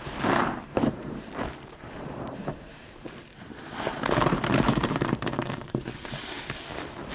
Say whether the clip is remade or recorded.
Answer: remade